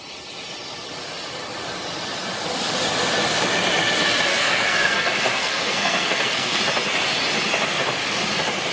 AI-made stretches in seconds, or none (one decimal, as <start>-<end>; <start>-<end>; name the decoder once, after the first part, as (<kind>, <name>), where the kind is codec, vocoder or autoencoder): 4.3-6.6 (codec, SNAC)